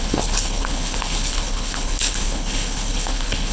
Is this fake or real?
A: fake